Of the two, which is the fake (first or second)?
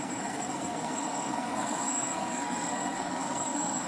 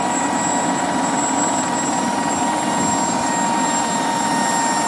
first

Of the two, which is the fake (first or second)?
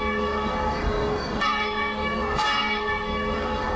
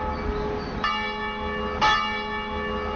first